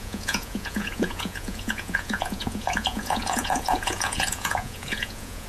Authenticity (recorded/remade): remade